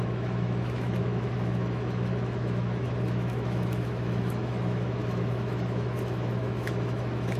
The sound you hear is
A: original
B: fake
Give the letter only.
B